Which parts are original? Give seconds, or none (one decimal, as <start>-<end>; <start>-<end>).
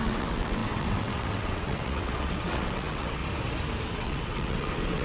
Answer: 3.2-3.9